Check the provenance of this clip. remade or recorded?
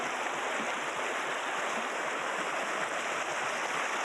recorded